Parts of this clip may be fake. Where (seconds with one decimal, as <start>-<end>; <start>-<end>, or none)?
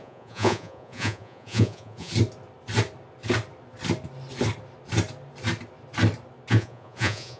0.0-2.1; 6.5-7.4